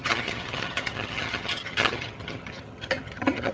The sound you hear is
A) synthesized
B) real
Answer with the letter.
A